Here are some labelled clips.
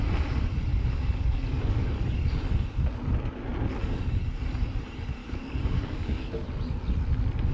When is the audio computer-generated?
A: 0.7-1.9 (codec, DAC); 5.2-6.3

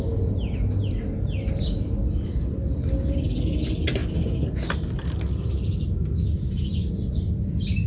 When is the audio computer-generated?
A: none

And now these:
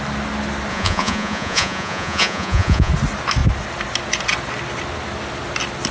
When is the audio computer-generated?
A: 0.7-2.9 (vocoder, Vocos)